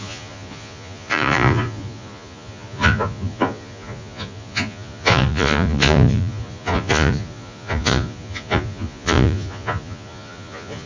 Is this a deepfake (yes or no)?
yes